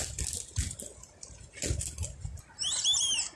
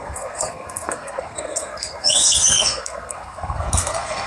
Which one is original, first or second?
first